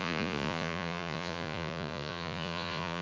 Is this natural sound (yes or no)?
no